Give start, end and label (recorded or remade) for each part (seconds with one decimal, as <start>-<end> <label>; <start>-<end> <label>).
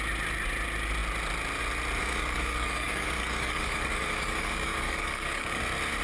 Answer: 0.0-2.0 recorded; 2.0-5.6 remade; 5.6-6.0 recorded